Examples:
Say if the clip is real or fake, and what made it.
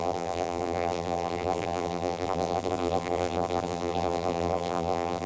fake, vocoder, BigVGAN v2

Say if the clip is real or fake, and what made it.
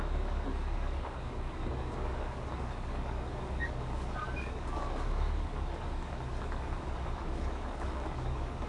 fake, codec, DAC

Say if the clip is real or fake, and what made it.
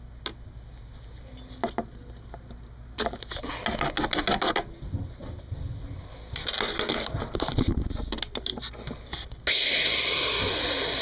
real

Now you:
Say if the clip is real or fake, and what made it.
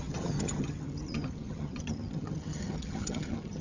fake, vocoder, HiFi-GAN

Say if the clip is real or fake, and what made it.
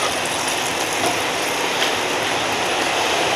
real